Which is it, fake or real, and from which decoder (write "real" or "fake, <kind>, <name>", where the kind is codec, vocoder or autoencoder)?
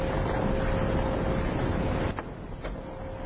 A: real